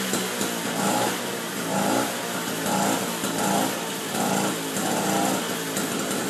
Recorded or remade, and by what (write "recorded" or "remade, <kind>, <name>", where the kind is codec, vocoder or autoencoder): recorded